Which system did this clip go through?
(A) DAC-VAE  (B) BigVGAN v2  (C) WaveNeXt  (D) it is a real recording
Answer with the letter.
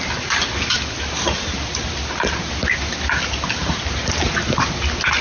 D